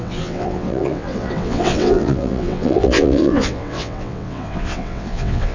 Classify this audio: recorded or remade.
remade